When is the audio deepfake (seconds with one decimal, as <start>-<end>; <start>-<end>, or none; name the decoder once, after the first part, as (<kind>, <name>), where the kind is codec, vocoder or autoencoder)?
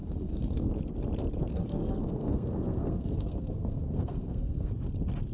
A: 0.0-0.7 (codec, SNAC); 1.5-4.7